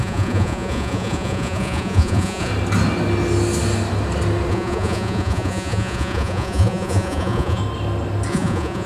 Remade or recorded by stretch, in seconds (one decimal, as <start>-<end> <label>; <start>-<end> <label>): 0.0-2.5 remade; 2.5-4.5 recorded; 4.5-7.6 remade; 7.6-8.3 recorded; 8.3-8.9 remade